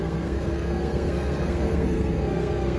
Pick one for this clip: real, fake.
fake